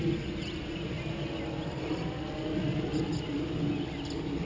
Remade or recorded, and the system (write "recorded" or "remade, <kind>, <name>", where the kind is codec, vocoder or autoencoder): recorded